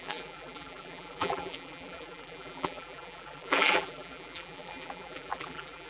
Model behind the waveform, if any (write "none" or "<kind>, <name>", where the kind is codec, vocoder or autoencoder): vocoder, BigVGAN v2